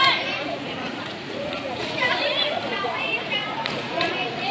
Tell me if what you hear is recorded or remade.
remade